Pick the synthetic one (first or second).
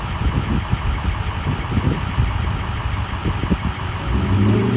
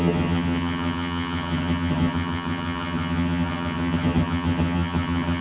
second